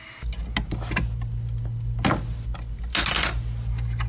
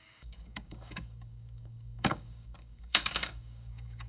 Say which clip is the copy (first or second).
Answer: second